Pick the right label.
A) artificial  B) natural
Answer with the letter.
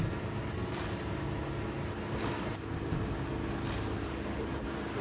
B